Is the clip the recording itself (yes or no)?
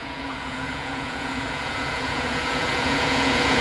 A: no